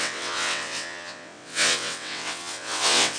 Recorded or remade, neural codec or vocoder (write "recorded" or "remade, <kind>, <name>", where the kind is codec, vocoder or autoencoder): remade, vocoder, WaveNeXt